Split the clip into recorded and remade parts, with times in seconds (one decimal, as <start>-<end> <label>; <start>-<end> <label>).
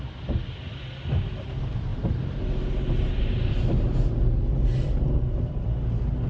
0.0-6.3 recorded